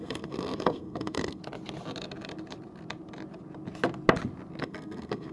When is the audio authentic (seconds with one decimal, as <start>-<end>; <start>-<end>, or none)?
1.4-4.6